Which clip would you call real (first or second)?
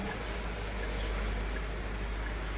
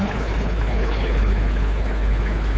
first